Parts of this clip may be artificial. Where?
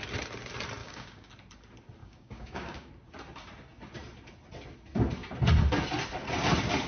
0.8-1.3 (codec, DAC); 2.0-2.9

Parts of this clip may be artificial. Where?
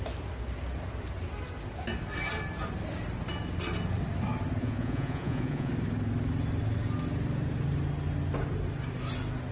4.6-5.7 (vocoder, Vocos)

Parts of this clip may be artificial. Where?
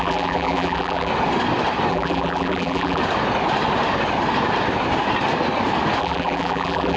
0.0-1.1 (vocoder, BigVGAN v2); 1.9-3.0; 6.0-7.0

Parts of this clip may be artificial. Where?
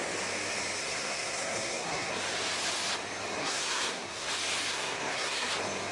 0.8-2.1 (codec, SNAC); 3.4-4.3; 4.7-5.5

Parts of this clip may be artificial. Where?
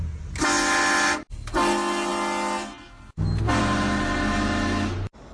none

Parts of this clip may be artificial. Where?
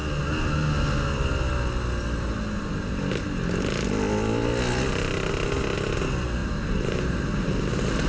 6.4-7.5 (vocoder, BigVGAN v2)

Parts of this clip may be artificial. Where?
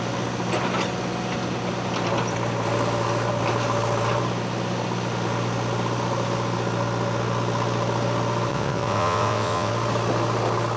8.5-9.7 (vocoder, WaveNeXt)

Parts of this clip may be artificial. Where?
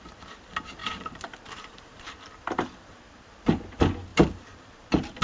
0.8-2.1 (vocoder, BigVGAN v2); 4.1-5.2